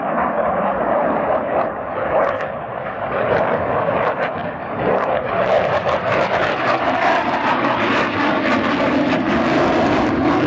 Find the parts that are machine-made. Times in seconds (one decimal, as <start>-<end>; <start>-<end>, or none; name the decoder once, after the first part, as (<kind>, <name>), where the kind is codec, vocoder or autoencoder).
0.0-10.5 (codec, DAC)